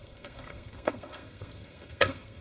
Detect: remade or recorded remade